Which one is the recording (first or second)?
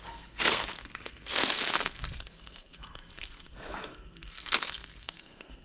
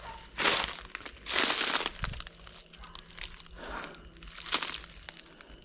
second